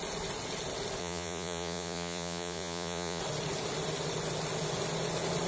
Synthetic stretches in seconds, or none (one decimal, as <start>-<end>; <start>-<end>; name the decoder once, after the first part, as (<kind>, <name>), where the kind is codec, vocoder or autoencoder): 1.0-3.2 (vocoder, Vocos)